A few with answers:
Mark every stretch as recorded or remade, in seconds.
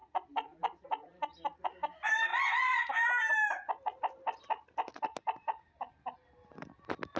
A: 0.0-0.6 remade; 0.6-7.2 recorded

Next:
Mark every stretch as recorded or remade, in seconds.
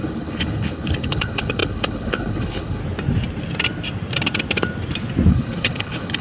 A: 0.0-2.8 remade; 2.8-5.3 recorded; 5.3-6.2 remade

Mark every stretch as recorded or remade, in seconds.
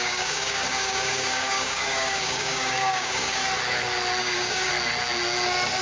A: 0.0-3.4 remade; 3.4-4.2 recorded; 4.2-4.7 remade; 4.7-5.8 recorded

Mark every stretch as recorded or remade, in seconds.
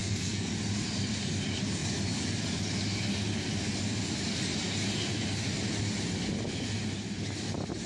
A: 0.0-0.5 remade; 0.5-7.9 recorded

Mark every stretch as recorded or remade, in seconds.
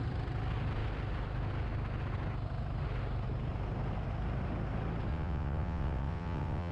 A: 0.0-5.1 recorded; 5.1-6.7 remade